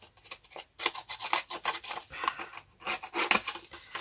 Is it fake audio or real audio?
real